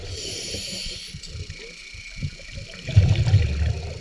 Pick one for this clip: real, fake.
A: real